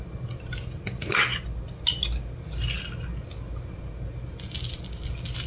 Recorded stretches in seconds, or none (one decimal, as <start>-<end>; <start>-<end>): 0.0-5.5